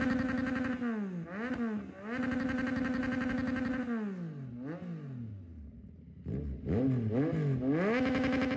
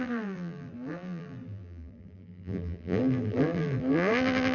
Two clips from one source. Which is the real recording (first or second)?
first